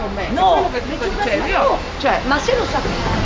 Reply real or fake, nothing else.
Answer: real